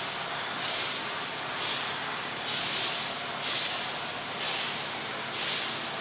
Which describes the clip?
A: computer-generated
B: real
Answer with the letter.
B